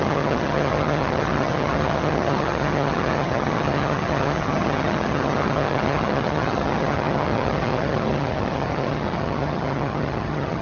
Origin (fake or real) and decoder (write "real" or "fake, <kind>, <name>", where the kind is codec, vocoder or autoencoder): fake, vocoder, HiFi-GAN